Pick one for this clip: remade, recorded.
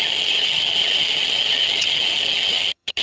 remade